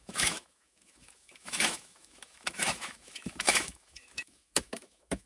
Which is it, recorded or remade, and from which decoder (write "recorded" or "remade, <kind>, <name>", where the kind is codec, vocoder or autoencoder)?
remade, autoencoder, DAC-VAE